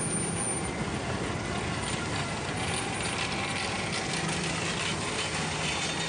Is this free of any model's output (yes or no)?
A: yes